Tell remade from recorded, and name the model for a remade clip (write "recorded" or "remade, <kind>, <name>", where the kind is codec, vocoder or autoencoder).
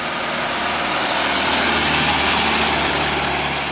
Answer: recorded